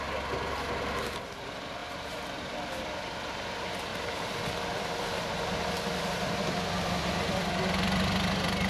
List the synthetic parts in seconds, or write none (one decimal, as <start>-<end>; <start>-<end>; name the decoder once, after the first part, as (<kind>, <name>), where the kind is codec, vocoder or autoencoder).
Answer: 1.8-2.4 (vocoder, BigVGAN v2); 3.9-4.4